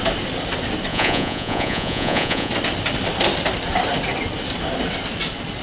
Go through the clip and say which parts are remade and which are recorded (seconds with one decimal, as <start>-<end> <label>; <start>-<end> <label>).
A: 0.0-0.9 recorded; 0.9-2.5 remade; 2.5-5.6 recorded